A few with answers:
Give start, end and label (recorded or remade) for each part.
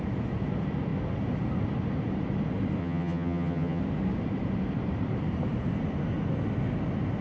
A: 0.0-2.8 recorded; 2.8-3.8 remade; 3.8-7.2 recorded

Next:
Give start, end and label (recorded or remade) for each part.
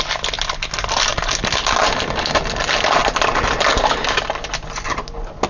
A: 0.0-5.5 recorded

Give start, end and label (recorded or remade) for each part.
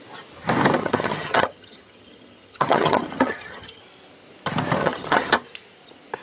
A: 0.0-0.8 recorded; 0.8-3.8 remade; 3.8-4.8 recorded; 4.8-5.3 remade; 5.3-6.2 recorded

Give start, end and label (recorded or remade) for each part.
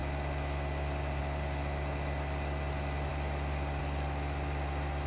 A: 0.0-5.1 recorded